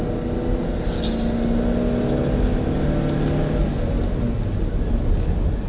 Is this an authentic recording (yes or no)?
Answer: yes